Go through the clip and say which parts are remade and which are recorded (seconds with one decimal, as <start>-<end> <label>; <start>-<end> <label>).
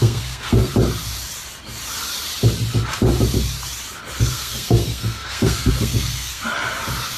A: 0.0-0.7 remade; 0.7-4.2 recorded; 4.2-6.4 remade; 6.4-7.2 recorded